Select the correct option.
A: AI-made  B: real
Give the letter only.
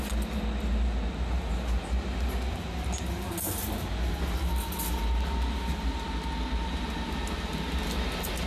B